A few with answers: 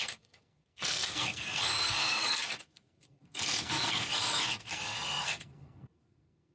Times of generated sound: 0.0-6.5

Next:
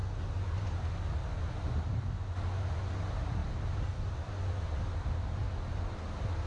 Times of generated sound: none

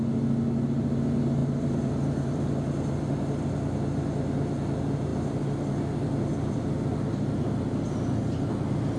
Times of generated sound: 1.4-2.4

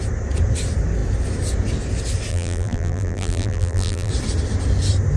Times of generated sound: 2.3-4.1

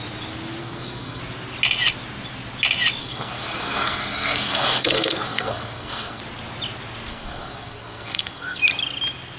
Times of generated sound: 0.6-1.2; 3.0-6.2; 7.1-8.6

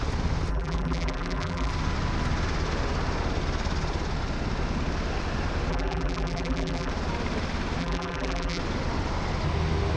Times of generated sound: 0.5-1.7; 5.7-6.9; 7.8-8.6

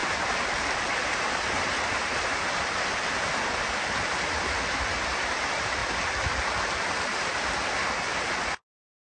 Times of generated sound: 0.0-5.8; 8.4-9.2